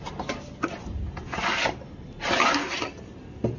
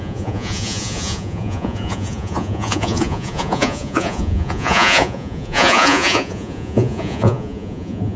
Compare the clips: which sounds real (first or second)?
first